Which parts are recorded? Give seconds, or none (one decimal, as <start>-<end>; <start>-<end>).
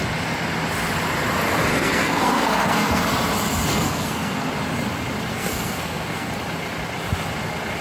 0.0-1.7; 3.0-3.7; 4.5-5.3; 6.3-7.8